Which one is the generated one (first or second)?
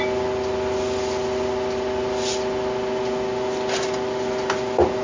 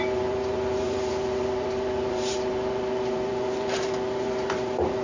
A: second